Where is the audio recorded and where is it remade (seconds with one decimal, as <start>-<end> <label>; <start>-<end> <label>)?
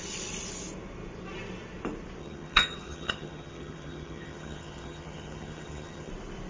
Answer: 0.0-2.2 recorded; 2.2-6.1 remade; 6.1-6.5 recorded